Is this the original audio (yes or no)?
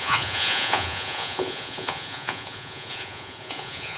no